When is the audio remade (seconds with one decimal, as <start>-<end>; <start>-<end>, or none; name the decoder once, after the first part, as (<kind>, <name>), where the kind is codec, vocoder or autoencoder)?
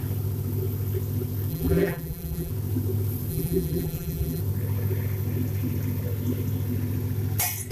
1.5-2.5 (vocoder, BigVGAN v2); 3.3-4.4